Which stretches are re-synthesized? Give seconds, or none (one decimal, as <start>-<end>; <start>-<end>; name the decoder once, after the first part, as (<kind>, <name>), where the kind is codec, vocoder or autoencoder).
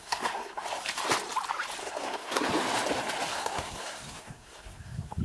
0.0-0.8 (codec, SNAC); 1.8-2.5; 3.3-5.2